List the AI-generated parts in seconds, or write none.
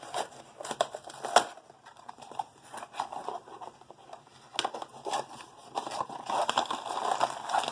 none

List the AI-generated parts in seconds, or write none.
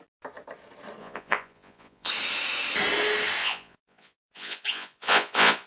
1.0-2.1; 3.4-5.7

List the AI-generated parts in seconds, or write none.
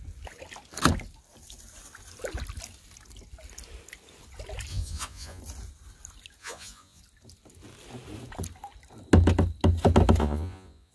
4.7-5.4; 6.4-7.0; 10.2-10.9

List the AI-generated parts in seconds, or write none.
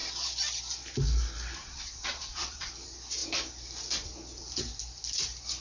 1.6-2.7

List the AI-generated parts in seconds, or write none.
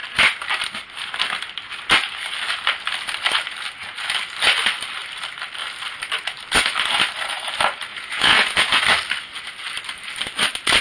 7.9-8.8